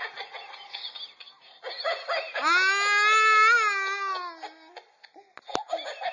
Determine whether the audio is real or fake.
real